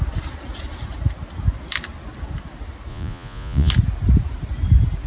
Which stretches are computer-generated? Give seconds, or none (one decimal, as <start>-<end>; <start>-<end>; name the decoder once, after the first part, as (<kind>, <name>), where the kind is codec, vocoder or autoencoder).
2.9-3.7 (vocoder, Vocos)